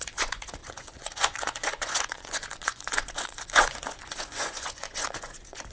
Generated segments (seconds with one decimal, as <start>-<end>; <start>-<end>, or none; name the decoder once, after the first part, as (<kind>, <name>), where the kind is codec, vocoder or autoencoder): 0.0-5.7 (vocoder, Vocos)